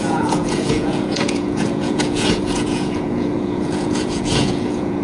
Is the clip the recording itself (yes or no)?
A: no